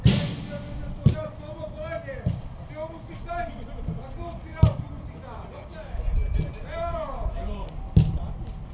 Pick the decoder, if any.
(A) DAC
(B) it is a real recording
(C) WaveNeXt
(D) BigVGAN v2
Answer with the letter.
B